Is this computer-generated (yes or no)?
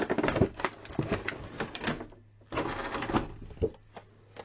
no